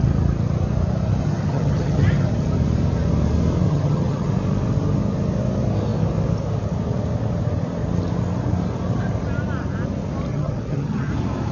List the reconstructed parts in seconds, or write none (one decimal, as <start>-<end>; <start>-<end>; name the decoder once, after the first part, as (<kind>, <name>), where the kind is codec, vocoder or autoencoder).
1.2-2.3 (vocoder, HiFi-GAN); 3.7-4.3; 10.3-11.1